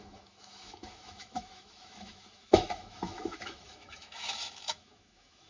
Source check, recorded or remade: remade